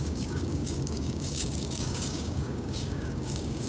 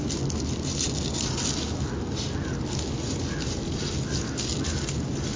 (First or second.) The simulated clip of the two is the first